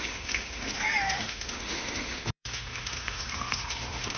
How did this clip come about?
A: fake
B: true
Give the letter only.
A